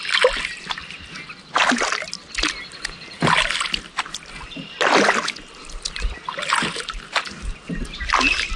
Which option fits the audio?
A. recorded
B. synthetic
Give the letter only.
A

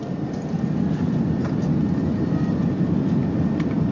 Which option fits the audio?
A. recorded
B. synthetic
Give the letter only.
A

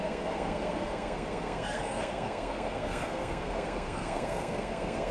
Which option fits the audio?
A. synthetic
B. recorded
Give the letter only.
A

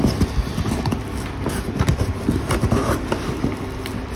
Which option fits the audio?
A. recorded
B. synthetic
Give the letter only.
A